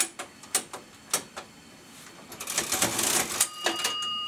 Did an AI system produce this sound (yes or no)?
no